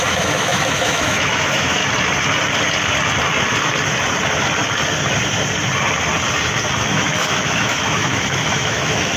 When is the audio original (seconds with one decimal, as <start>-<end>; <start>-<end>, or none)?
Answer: 1.8-6.9